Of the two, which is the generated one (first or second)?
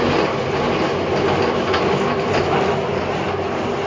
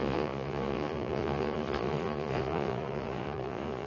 second